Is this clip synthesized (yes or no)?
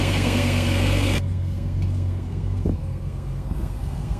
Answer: yes